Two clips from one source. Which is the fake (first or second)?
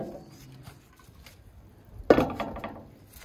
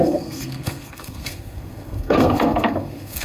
second